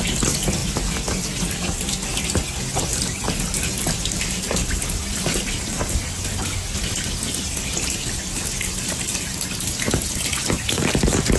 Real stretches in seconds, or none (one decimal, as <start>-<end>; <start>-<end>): 0.0-11.4